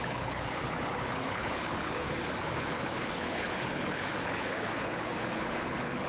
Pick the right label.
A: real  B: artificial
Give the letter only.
B